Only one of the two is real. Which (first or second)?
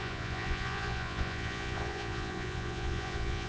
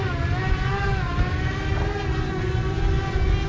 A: second